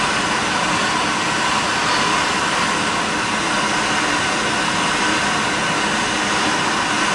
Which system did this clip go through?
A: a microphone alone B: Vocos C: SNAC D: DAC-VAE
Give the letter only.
A